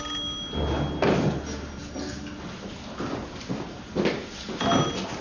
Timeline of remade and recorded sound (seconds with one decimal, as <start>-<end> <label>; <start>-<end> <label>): 0.0-5.2 recorded